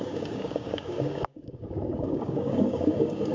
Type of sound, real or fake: fake